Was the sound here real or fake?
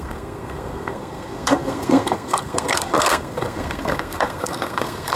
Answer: fake